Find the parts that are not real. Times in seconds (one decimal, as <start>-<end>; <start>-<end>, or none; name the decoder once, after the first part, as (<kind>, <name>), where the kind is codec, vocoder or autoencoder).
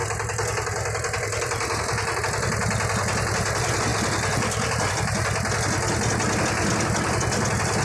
3.9-4.9 (vocoder, BigVGAN v2)